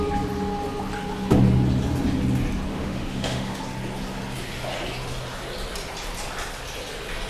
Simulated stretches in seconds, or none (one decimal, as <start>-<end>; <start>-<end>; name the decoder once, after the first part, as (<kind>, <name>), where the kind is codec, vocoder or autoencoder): 2.7-3.6 (autoencoder, DAC-VAE)